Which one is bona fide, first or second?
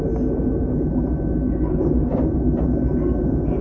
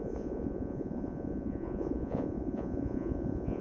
first